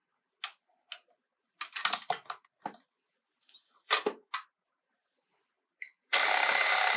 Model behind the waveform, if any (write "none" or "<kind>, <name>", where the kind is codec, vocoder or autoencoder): none